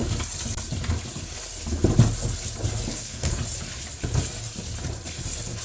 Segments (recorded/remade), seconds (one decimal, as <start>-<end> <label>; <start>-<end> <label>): 0.0-2.9 recorded; 2.9-3.4 remade; 3.4-5.6 recorded

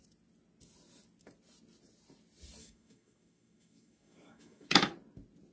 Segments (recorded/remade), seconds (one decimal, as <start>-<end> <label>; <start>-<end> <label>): 0.0-2.6 recorded; 2.6-4.9 remade; 4.9-5.5 recorded